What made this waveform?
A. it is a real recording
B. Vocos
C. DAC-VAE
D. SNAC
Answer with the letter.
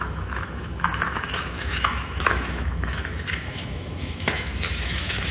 C